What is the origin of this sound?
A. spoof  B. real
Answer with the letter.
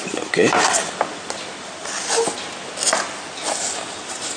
B